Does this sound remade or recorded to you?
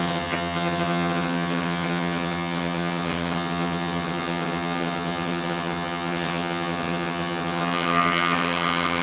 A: remade